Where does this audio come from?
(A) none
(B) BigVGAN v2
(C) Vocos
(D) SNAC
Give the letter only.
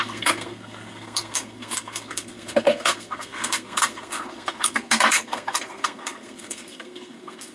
D